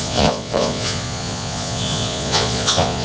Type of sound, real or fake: fake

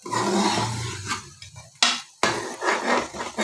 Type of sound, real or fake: real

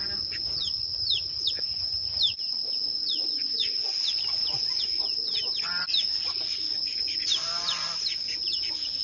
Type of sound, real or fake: real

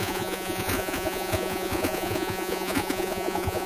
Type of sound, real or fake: fake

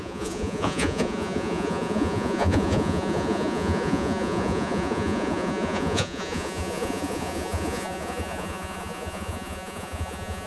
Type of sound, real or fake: fake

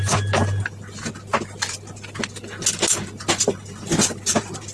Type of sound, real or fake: real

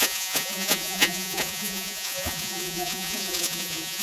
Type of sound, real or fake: fake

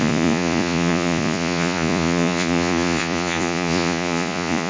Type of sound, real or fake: fake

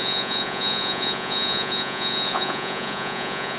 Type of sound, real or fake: fake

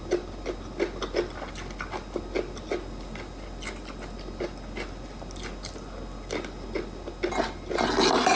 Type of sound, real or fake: real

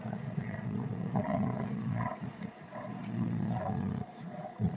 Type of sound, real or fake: fake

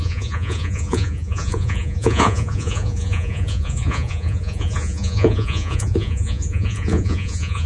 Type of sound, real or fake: fake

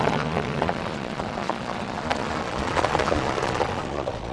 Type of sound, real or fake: fake